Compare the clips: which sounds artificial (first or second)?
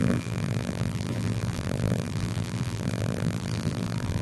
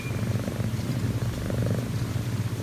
first